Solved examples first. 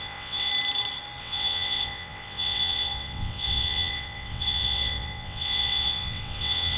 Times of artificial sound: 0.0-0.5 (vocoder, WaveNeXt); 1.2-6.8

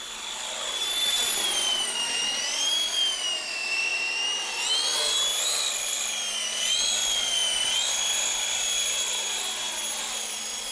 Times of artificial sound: none